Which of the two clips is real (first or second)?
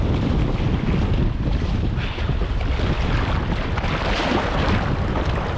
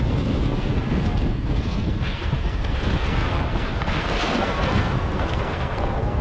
first